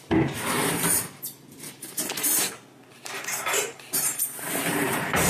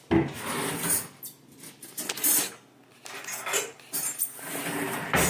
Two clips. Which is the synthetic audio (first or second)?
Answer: first